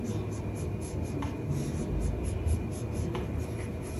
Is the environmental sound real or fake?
real